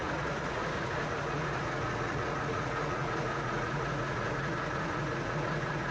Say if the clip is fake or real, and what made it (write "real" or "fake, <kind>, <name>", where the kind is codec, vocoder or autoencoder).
fake, vocoder, Vocos